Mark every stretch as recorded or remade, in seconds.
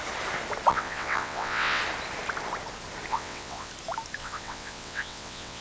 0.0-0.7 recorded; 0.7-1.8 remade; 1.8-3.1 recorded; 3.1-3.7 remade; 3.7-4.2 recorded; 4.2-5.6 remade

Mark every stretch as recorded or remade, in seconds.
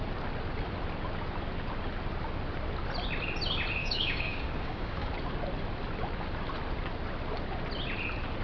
0.0-3.8 recorded; 3.8-5.1 remade; 5.1-8.4 recorded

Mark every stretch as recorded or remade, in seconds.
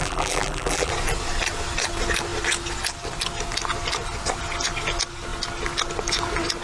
0.0-0.9 remade; 0.9-6.6 recorded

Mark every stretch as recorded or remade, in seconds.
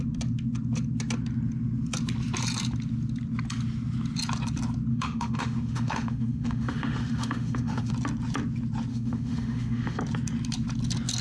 0.0-4.9 recorded; 4.9-7.9 remade; 7.9-8.9 recorded; 8.9-10.0 remade; 10.0-11.2 recorded